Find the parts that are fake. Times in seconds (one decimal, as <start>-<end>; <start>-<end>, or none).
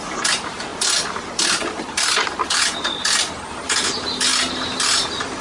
none